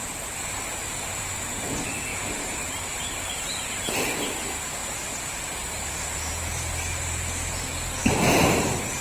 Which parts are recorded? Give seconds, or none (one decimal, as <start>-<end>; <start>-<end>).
1.1-2.1; 3.2-4.8; 5.9-9.0